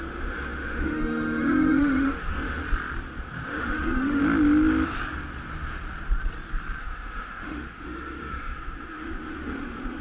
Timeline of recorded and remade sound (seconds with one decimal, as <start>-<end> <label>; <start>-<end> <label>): 0.0-2.6 remade; 2.6-3.2 recorded; 3.2-4.2 remade; 4.2-6.8 recorded; 6.8-10.0 remade